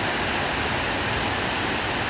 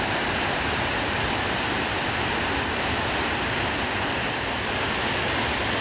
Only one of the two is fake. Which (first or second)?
second